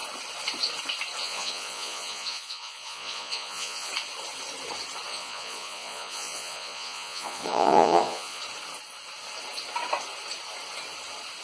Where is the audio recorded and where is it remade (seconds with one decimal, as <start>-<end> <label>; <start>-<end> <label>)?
0.0-1.2 recorded; 1.2-3.9 remade; 3.9-5.1 recorded; 5.1-8.4 remade; 8.4-11.4 recorded